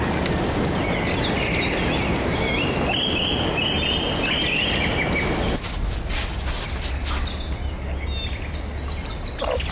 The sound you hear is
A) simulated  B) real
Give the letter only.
B